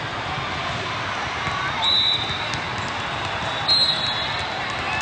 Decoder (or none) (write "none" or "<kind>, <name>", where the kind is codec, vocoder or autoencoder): none